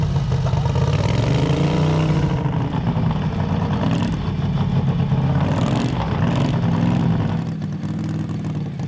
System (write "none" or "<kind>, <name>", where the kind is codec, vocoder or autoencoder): none